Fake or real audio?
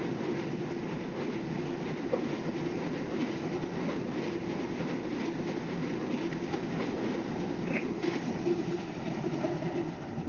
real